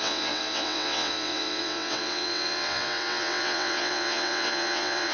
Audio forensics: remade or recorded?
remade